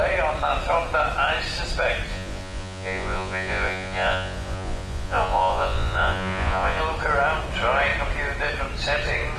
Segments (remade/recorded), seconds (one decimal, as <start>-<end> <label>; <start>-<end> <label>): 0.0-2.1 recorded; 2.1-6.8 remade; 6.8-9.4 recorded